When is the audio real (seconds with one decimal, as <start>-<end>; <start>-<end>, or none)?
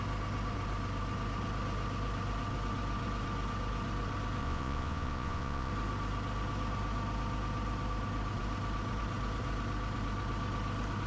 0.0-4.4; 5.7-11.1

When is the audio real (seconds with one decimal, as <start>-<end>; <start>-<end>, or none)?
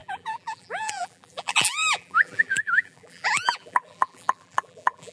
none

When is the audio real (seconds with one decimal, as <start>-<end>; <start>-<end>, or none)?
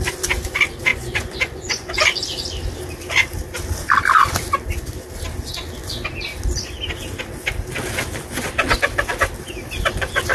0.0-0.9; 1.9-10.3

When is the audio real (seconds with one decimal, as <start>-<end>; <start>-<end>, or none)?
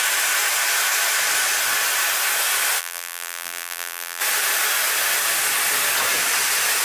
0.0-2.8; 4.2-6.8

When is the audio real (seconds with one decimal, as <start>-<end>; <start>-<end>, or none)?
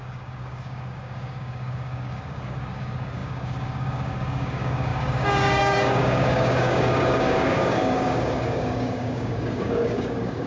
none